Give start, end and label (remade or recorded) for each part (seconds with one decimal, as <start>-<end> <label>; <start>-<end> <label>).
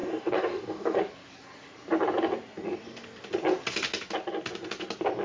0.0-1.0 remade; 1.0-5.2 recorded